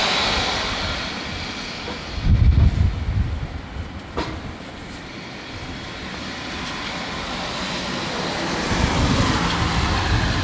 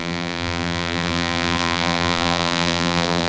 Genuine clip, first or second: first